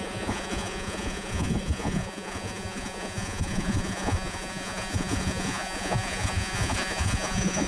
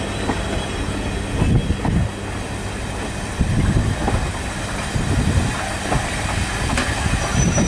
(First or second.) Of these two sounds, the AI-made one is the first